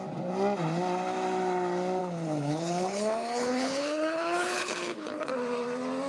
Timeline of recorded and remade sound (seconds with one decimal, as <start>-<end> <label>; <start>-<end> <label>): 0.0-2.0 recorded; 2.0-5.3 remade; 5.3-6.1 recorded